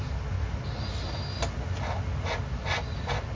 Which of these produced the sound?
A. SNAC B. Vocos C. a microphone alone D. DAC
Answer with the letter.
C